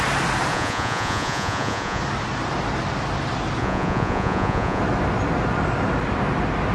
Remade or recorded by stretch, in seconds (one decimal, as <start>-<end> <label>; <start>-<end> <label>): 0.0-0.5 recorded; 0.5-2.0 remade; 2.0-3.6 recorded; 3.6-4.8 remade; 4.8-6.7 recorded